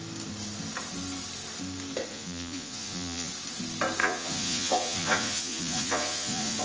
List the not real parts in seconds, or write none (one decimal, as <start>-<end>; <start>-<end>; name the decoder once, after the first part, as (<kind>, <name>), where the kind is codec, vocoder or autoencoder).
2.1-3.3 (vocoder, Vocos); 4.0-6.6